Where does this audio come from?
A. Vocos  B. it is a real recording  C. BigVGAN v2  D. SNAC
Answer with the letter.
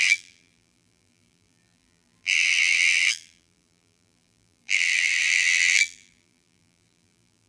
C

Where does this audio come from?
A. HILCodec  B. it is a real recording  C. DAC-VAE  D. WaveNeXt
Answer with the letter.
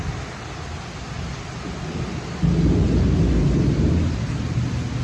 B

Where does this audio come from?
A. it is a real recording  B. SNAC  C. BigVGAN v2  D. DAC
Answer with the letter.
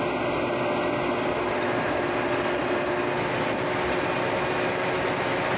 A